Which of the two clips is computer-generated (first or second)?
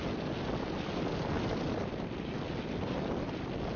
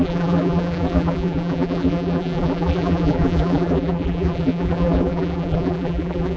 second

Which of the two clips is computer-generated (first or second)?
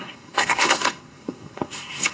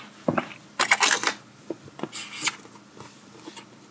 first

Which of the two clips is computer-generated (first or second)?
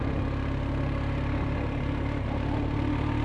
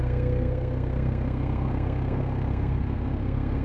second